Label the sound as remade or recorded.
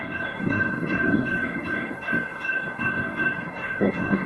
remade